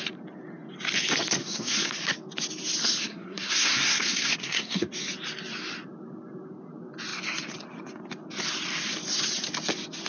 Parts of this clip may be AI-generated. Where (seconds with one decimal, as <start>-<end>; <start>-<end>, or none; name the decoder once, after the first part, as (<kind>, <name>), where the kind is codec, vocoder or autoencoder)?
1.4-1.9 (codec, SNAC); 3.0-4.9